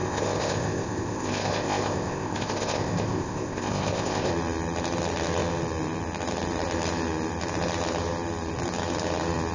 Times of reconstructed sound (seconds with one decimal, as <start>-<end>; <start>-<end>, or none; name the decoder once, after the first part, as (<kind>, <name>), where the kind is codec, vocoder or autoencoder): 0.0-4.3 (codec, ZipCodec)